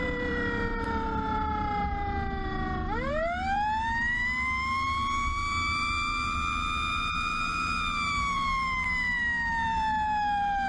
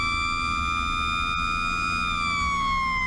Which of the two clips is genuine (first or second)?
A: second